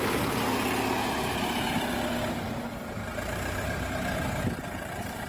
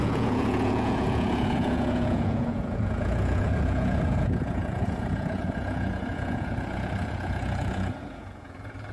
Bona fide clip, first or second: first